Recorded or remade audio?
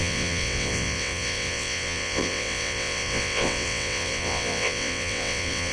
remade